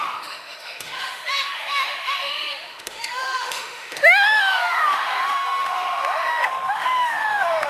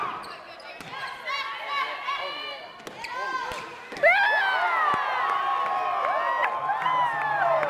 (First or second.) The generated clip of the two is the first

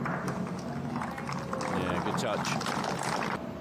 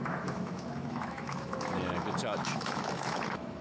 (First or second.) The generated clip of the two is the second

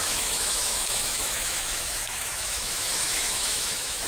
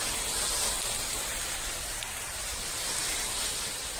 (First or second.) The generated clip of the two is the first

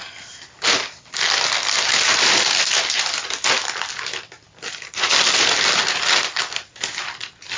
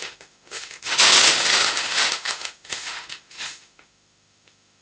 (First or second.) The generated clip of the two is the second